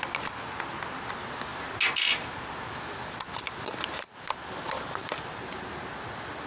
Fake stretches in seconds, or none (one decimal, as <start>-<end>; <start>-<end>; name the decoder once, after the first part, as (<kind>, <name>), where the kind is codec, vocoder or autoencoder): none